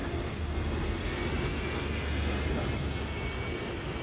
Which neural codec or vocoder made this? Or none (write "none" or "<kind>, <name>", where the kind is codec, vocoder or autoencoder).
none